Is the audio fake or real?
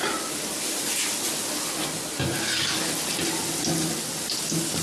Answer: real